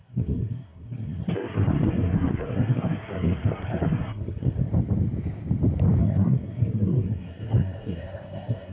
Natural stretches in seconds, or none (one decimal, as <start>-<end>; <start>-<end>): 4.7-6.0